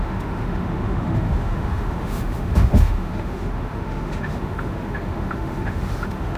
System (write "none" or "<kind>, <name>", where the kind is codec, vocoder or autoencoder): autoencoder, DAC-VAE